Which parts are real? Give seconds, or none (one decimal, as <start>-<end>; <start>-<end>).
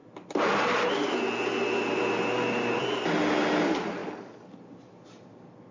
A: 0.0-4.0; 4.5-5.7